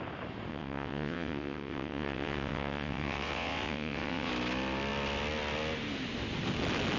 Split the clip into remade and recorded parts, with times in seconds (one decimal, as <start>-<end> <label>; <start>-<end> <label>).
0.0-0.5 recorded; 0.5-4.3 remade; 4.3-7.0 recorded